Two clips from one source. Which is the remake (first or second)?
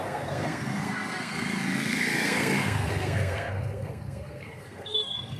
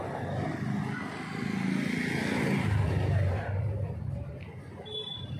first